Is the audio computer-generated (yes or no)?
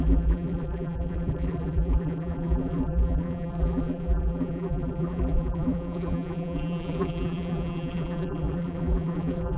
yes